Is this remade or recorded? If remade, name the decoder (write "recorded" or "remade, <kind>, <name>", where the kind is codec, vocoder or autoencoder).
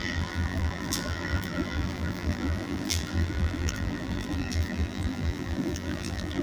remade, vocoder, BigVGAN v2